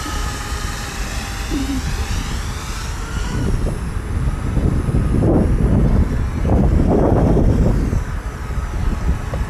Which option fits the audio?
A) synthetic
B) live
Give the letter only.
B